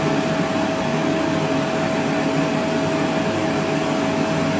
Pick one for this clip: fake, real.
real